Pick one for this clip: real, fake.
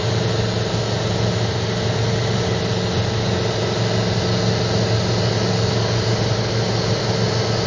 real